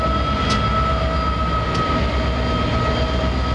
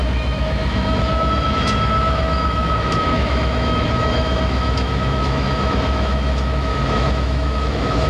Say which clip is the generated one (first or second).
second